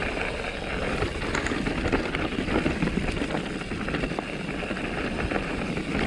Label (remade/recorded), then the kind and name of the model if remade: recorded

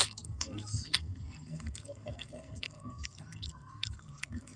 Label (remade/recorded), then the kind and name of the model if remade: remade, codec, SNAC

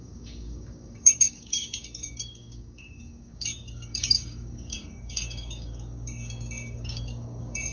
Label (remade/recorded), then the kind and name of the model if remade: remade, codec, DAC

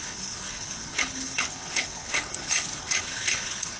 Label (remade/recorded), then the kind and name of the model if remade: remade, codec, HILCodec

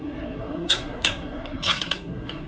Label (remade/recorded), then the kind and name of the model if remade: remade, codec, SNAC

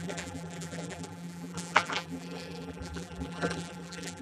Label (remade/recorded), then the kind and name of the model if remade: remade, vocoder, BigVGAN v2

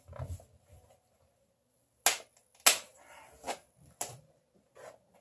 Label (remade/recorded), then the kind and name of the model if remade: recorded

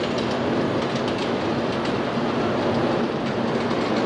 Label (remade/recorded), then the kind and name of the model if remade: recorded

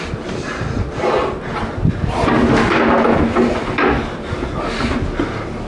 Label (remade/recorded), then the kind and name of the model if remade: recorded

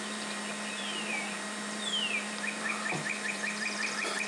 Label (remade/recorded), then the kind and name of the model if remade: remade, vocoder, BigVGAN v2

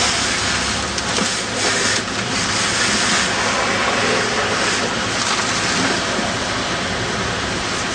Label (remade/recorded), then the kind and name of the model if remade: recorded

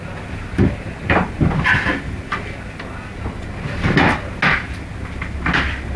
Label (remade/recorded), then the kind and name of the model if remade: recorded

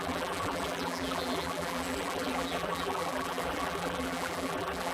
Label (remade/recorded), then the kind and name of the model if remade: remade, vocoder, BigVGAN v2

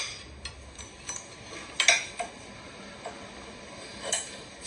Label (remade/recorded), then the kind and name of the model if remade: recorded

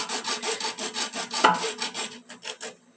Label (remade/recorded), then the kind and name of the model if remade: recorded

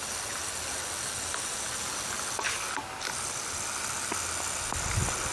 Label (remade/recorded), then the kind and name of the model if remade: recorded